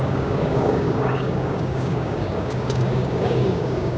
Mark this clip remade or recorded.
remade